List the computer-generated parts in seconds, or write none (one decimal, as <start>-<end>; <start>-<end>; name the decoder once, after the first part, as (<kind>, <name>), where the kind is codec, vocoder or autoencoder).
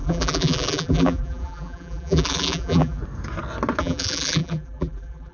0.0-3.0 (vocoder, BigVGAN v2); 3.8-5.3